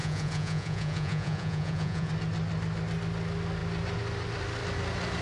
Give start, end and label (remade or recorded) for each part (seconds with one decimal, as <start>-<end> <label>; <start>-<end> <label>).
0.0-2.1 remade; 2.1-5.2 recorded

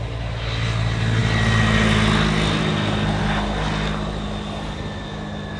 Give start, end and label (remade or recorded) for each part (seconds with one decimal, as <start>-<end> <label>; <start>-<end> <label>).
0.0-5.6 recorded

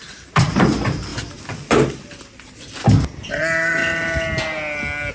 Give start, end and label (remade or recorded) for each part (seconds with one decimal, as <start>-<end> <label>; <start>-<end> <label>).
0.0-1.1 remade; 1.1-3.3 recorded; 3.3-3.8 remade; 3.8-5.1 recorded

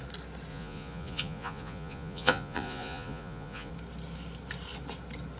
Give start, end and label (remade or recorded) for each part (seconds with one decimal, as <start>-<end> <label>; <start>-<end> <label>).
0.0-0.5 recorded; 0.5-3.7 remade; 3.7-5.4 recorded

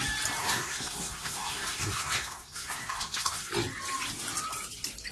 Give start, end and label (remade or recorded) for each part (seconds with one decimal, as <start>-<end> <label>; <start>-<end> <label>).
0.0-0.4 recorded; 0.4-3.5 remade; 3.5-5.1 recorded

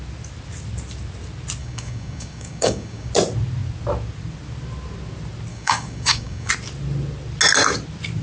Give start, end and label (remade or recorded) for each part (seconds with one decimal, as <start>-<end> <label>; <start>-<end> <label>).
0.0-1.6 recorded; 1.6-3.1 remade; 3.1-5.5 recorded; 5.5-6.5 remade; 6.5-8.2 recorded

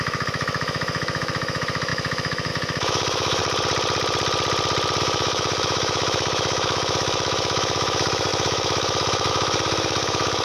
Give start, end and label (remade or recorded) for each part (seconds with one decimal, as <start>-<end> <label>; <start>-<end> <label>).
0.0-3.4 remade; 3.4-5.0 recorded; 5.0-10.4 remade

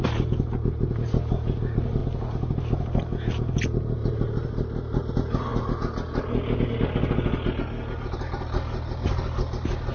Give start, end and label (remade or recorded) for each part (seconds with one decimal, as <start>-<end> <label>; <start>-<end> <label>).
0.0-9.9 recorded